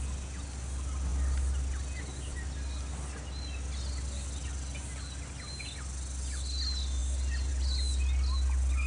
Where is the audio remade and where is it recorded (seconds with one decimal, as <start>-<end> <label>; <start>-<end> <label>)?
0.0-8.9 recorded